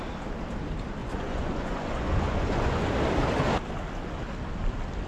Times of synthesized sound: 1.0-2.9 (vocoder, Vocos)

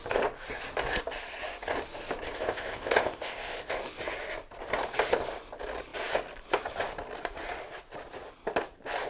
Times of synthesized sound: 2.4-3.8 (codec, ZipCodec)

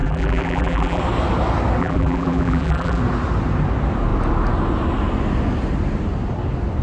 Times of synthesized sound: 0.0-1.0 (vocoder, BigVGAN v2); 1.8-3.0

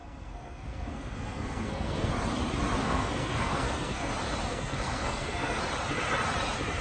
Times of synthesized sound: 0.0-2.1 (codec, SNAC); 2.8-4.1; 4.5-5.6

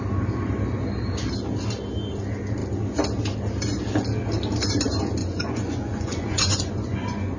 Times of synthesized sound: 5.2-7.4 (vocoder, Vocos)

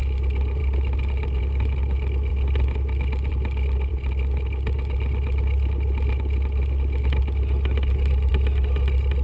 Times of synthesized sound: none

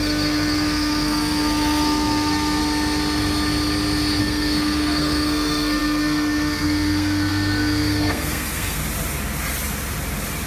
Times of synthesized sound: 0.0-2.6 (codec, SNAC); 4.2-8.8

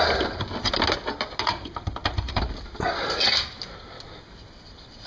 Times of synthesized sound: none